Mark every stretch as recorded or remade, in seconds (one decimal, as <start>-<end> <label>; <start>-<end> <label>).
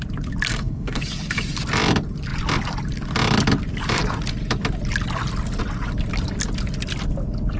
0.0-0.5 recorded; 0.5-1.0 remade; 1.0-7.6 recorded